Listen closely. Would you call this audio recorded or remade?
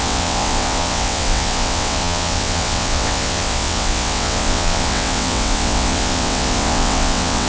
remade